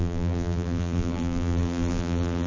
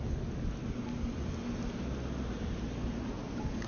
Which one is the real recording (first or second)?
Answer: second